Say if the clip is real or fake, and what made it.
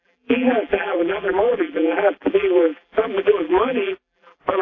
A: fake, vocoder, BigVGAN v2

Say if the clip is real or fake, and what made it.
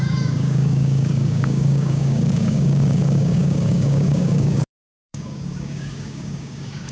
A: fake, codec, DAC